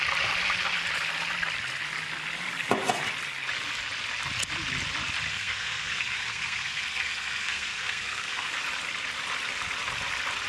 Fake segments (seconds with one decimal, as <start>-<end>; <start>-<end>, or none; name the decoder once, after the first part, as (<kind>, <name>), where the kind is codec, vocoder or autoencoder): 5.3-8.5 (codec, SNAC)